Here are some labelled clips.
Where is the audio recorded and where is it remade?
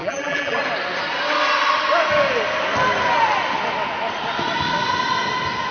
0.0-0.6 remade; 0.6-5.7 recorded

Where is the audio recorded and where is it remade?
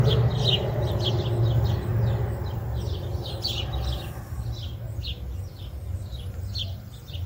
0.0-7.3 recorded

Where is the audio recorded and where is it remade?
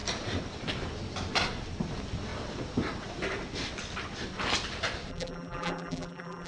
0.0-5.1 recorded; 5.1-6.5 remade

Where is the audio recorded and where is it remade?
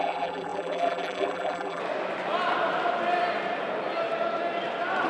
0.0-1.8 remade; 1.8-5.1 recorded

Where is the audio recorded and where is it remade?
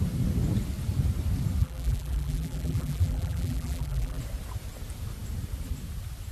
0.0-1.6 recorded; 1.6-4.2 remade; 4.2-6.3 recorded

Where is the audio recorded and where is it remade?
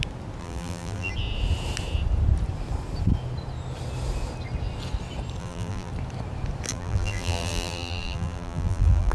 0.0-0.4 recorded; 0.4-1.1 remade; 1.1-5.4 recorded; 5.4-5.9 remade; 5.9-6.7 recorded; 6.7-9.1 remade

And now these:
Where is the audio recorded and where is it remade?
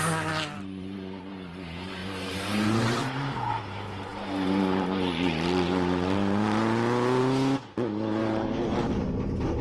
0.0-2.0 recorded; 2.0-3.6 remade; 3.6-8.2 recorded; 8.2-9.0 remade; 9.0-9.6 recorded